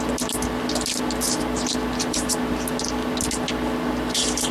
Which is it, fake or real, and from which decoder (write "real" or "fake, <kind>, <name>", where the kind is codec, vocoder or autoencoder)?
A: real